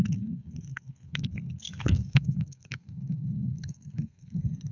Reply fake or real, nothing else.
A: fake